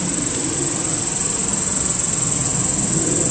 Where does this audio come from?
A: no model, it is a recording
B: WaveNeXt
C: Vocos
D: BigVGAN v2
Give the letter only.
A